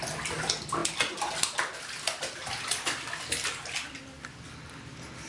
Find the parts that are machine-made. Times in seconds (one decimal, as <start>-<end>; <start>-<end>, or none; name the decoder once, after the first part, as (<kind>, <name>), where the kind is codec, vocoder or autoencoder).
none